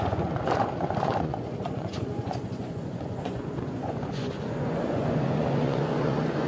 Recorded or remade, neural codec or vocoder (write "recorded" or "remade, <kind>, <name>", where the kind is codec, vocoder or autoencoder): remade, vocoder, Vocos